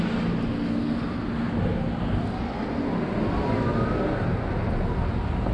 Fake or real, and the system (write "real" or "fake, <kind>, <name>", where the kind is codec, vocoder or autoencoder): real